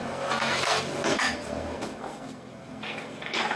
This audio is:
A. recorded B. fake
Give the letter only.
B